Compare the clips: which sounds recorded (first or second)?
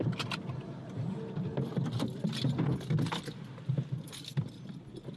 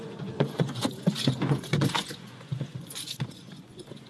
first